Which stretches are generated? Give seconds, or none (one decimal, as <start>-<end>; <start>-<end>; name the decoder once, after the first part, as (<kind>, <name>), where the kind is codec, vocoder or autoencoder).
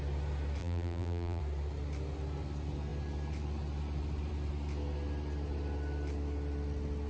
0.6-1.4 (vocoder, BigVGAN v2)